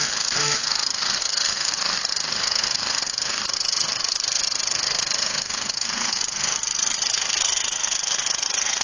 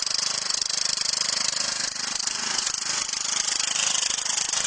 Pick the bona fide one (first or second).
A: second